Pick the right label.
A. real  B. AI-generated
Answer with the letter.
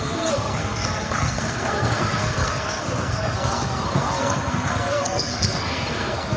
B